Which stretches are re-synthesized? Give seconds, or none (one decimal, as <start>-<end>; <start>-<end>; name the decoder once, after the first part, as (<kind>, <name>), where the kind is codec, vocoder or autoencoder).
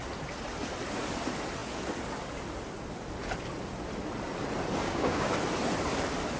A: 4.8-5.3 (codec, DAC)